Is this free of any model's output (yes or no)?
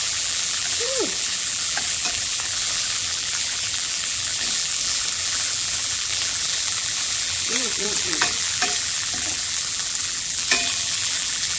no